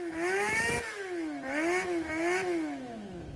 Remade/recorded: remade